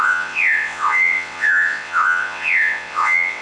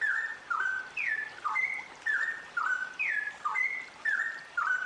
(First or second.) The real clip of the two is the second